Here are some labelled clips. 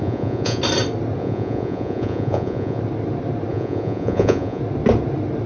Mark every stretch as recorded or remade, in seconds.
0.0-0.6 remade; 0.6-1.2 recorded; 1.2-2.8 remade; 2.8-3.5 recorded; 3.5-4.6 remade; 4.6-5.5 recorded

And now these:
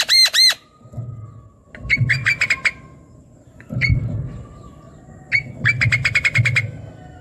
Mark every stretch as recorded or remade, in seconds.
0.0-3.9 recorded; 3.9-4.8 remade; 4.8-7.2 recorded

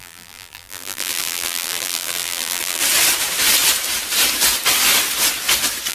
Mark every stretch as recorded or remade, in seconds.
0.0-2.8 remade; 2.8-5.9 recorded